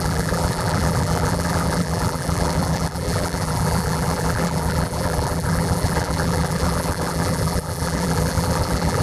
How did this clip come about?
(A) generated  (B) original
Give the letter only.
A